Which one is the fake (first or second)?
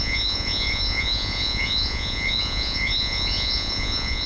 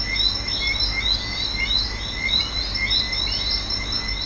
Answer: first